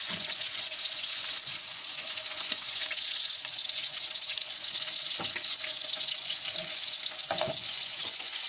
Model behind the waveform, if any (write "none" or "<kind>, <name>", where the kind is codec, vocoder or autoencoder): vocoder, Vocos